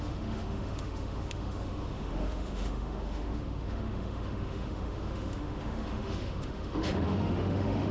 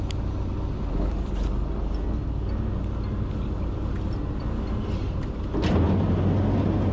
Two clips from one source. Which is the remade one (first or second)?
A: first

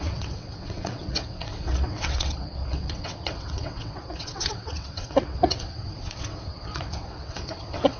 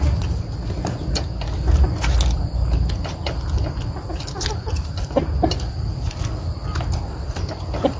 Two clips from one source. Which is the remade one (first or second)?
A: first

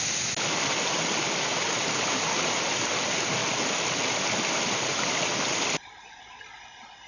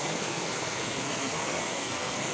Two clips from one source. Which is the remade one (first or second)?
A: second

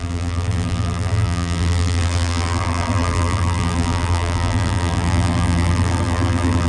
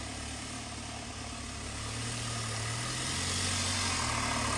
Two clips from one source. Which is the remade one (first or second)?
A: first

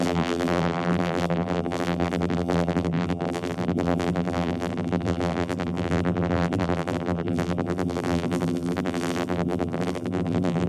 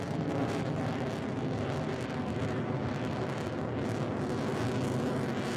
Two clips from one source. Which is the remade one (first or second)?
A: first